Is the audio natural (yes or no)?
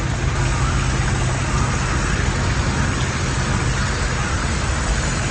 yes